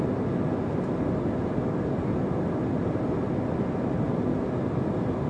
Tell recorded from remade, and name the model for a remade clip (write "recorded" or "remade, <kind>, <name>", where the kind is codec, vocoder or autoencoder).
recorded